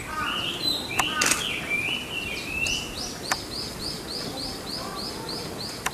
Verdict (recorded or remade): recorded